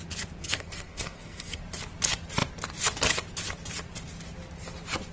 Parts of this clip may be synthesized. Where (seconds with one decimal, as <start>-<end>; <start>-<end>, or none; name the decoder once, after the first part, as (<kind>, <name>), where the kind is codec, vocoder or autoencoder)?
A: 0.4-1.6 (codec, SNAC)